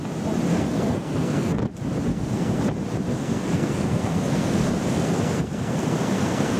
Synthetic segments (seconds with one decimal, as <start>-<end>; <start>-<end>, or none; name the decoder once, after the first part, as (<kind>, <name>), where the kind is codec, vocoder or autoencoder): 0.5-1.6 (codec, SNAC); 2.1-2.6; 3.1-6.6